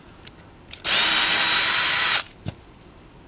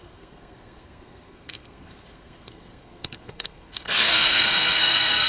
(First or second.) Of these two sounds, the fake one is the second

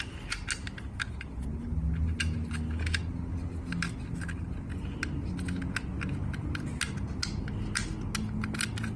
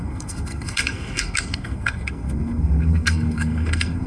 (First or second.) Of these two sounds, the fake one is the second